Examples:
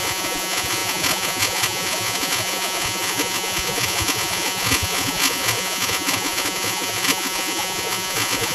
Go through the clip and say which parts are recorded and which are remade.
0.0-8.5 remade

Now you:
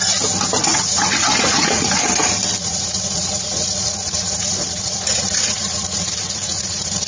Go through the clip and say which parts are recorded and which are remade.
0.0-0.7 recorded; 0.7-2.0 remade; 2.0-2.6 recorded; 2.6-7.1 remade

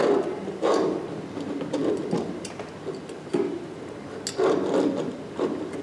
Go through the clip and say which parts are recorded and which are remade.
0.0-5.8 recorded